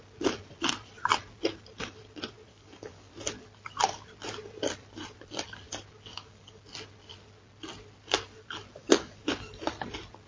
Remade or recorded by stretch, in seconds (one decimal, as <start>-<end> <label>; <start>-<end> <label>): 0.0-2.5 recorded; 2.5-3.1 remade; 3.1-6.1 recorded; 6.1-6.6 remade; 6.6-8.8 recorded; 8.8-9.5 remade; 9.5-10.3 recorded